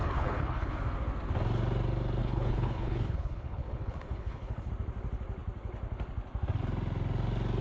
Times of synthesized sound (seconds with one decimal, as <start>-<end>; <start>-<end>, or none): 0.0-0.7; 2.2-4.7